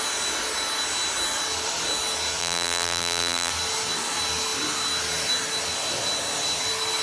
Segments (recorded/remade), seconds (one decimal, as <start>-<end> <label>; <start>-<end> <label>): 0.0-2.4 recorded; 2.4-3.5 remade; 3.5-7.0 recorded